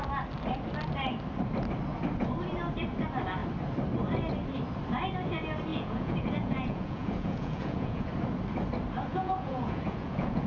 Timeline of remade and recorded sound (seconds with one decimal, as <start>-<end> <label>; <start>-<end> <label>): 0.0-5.7 recorded; 5.7-8.1 remade; 8.1-9.1 recorded; 9.1-10.5 remade